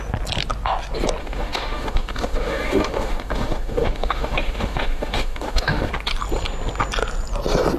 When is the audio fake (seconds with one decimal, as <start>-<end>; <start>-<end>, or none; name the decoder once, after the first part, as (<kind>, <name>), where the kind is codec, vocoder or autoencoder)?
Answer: 1.2-5.9 (autoencoder, DAC-VAE)